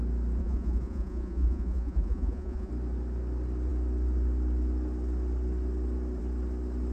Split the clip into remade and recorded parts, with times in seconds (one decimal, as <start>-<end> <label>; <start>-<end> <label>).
0.0-0.4 recorded; 0.4-2.7 remade; 2.7-6.9 recorded